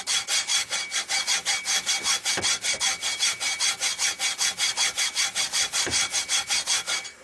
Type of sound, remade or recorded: recorded